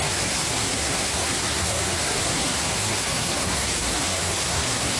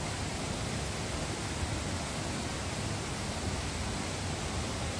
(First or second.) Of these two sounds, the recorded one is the second